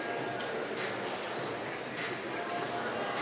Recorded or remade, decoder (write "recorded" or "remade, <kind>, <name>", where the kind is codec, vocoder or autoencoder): recorded